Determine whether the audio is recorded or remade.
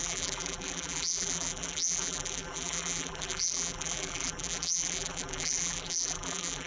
remade